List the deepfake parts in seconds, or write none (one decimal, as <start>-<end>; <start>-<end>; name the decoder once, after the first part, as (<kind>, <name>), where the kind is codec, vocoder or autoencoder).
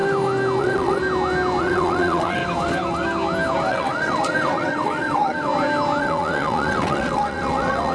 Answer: 0.6-1.0 (vocoder, WaveNeXt); 1.6-2.4; 3.7-5.5; 6.0-7.9